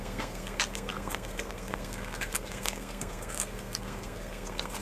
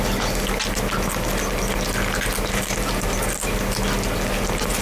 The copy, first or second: first